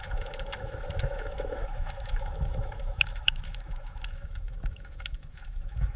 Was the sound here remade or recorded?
remade